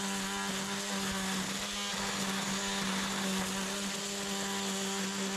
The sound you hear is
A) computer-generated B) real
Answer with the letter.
B